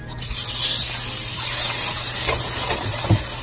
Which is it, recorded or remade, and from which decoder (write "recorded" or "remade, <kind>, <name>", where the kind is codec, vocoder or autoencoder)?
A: recorded